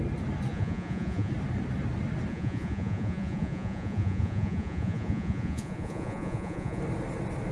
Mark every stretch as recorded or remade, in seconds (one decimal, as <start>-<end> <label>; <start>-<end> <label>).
0.0-0.5 recorded; 0.5-1.3 remade; 1.3-2.3 recorded; 2.3-6.8 remade; 6.8-7.5 recorded